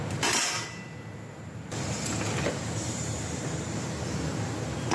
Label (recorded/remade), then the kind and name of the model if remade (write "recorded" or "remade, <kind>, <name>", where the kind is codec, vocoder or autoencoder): remade, vocoder, BigVGAN v2